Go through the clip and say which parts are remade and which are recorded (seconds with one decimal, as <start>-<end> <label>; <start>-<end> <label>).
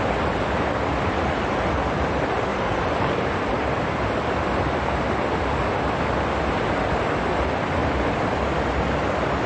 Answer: 0.0-2.5 recorded; 2.5-3.5 remade; 3.5-9.5 recorded